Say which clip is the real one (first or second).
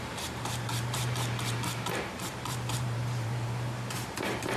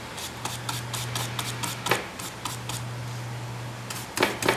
second